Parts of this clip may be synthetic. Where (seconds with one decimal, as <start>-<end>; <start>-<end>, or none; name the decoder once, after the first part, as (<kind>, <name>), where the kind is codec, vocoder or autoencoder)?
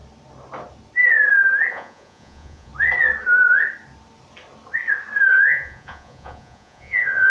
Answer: 1.7-2.7 (vocoder, Vocos); 5.3-7.3